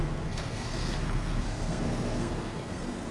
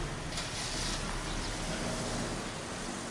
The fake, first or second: first